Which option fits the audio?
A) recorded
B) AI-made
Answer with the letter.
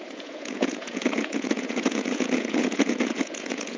B